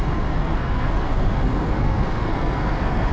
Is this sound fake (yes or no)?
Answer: yes